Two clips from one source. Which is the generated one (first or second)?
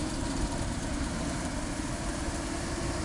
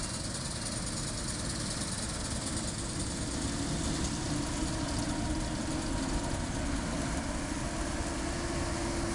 first